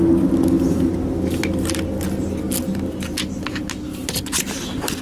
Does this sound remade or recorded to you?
recorded